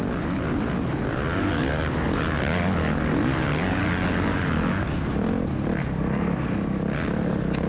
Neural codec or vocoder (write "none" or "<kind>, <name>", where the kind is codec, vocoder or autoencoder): none